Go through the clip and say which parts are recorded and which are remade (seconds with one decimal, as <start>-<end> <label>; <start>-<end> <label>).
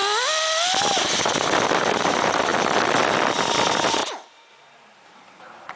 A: 0.0-1.0 recorded; 1.0-2.5 remade; 2.5-3.4 recorded; 3.4-5.8 remade